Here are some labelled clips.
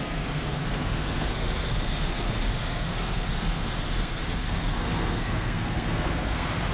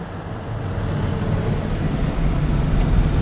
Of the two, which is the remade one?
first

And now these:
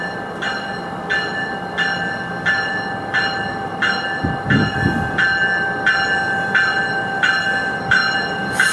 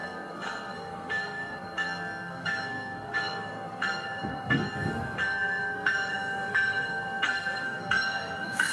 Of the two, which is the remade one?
second